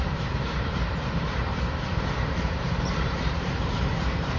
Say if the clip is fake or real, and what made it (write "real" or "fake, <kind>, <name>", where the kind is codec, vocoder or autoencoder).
fake, vocoder, BigVGAN v2